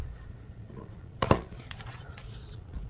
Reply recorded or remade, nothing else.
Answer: remade